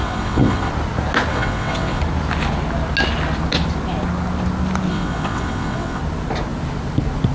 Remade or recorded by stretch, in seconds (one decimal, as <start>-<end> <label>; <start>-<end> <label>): 0.0-0.7 remade; 0.7-1.3 recorded; 1.3-2.0 remade; 2.0-4.9 recorded; 4.9-6.0 remade; 6.0-7.3 recorded